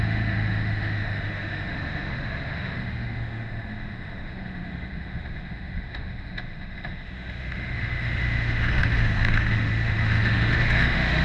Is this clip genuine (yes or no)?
no